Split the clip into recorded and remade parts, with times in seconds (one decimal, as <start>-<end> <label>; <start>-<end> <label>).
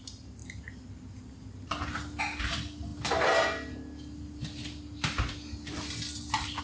0.0-6.6 recorded